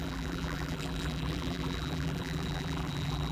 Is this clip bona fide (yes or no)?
no